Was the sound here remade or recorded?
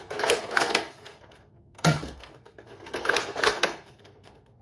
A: remade